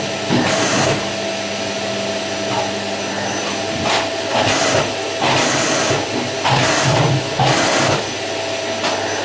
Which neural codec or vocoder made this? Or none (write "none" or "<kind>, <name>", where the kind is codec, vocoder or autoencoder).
none